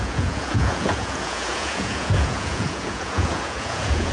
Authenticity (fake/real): fake